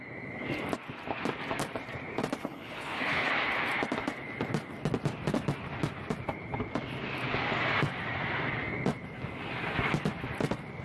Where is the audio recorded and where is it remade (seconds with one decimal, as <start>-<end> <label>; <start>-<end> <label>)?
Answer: 0.0-2.4 recorded; 2.4-3.3 remade; 3.3-10.8 recorded